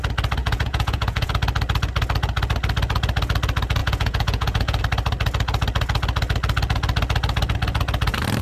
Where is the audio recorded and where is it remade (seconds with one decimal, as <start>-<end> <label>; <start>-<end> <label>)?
0.0-0.4 recorded; 0.4-1.3 remade; 1.3-3.8 recorded; 3.8-4.8 remade; 4.8-8.4 recorded

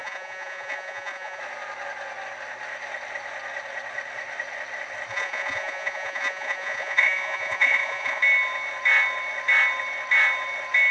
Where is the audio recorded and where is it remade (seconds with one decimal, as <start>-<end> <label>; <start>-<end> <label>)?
0.0-1.4 remade; 1.4-5.1 recorded; 5.1-8.2 remade; 8.2-10.9 recorded

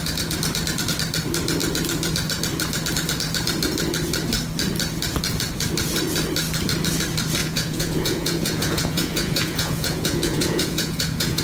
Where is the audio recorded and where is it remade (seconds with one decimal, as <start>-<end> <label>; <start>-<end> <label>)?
0.0-7.4 recorded; 7.4-11.4 remade

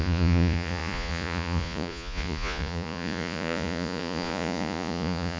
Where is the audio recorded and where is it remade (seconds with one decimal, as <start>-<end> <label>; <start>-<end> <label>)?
0.0-5.4 remade

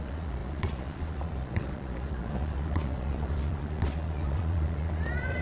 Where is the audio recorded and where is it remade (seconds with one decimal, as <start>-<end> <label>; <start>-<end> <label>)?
0.0-5.4 remade

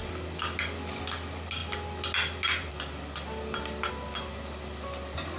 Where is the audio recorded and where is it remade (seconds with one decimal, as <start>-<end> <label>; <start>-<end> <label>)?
0.0-5.4 recorded

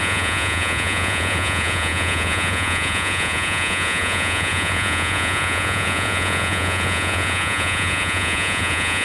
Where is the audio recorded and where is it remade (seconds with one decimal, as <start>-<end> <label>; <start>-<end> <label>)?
0.0-9.0 remade

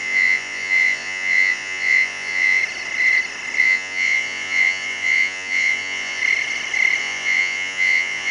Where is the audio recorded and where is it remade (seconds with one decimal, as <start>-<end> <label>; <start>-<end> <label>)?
0.0-2.6 remade; 2.6-3.6 recorded; 3.6-6.2 remade; 6.2-7.0 recorded; 7.0-8.3 remade